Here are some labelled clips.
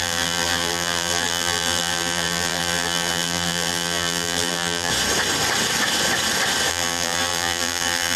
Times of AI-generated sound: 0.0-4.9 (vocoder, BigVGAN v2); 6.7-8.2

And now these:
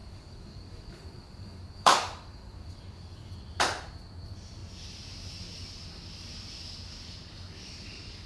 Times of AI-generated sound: 0.0-3.3 (codec, DAC)